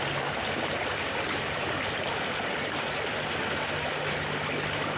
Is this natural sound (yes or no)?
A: yes